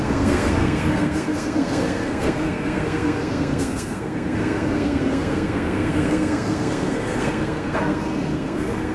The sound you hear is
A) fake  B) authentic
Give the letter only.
A